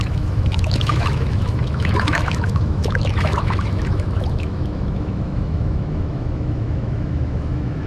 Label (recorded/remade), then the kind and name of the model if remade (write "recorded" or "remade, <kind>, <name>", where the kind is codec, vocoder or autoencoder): remade, autoencoder, DAC-VAE